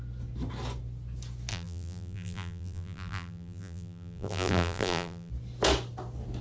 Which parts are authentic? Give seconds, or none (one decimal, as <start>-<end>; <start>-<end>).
0.0-1.5; 5.3-6.4